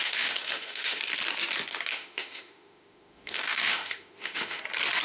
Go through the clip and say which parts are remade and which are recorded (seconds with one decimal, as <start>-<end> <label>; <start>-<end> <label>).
0.0-1.0 remade; 1.0-1.9 recorded; 1.9-4.6 remade; 4.6-5.0 recorded

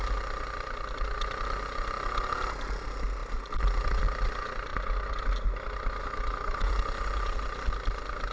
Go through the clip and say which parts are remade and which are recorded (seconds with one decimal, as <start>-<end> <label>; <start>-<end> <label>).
0.0-6.0 recorded; 6.0-6.7 remade; 6.7-8.3 recorded

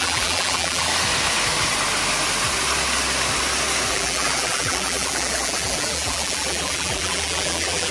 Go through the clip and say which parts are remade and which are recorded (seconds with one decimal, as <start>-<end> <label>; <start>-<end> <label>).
0.0-0.9 remade; 0.9-3.9 recorded; 3.9-7.9 remade